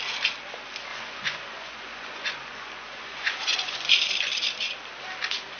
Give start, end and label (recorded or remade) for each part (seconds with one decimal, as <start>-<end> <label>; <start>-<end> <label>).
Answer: 0.0-0.9 recorded; 0.9-3.9 remade; 3.9-5.6 recorded